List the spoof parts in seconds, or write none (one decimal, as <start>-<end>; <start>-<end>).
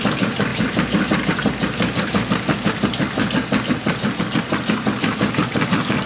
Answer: none